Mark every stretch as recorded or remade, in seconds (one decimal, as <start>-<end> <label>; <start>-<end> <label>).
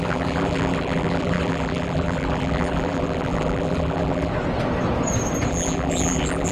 0.0-4.3 remade; 4.3-5.5 recorded; 5.5-6.5 remade